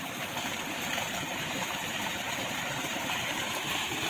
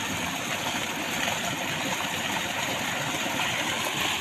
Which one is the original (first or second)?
second